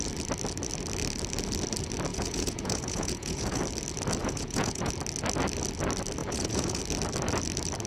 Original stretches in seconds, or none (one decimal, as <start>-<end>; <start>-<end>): 0.0-2.1; 3.6-4.2; 4.9-6.2; 6.8-7.9